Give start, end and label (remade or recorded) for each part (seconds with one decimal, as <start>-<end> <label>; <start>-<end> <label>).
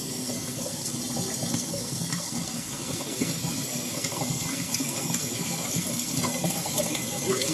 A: 0.0-1.0 remade; 1.0-1.5 recorded; 1.5-7.5 remade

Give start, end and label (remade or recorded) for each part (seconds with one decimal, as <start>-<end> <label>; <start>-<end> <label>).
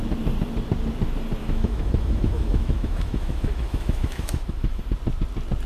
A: 0.0-1.4 recorded; 1.4-4.8 remade; 4.8-5.7 recorded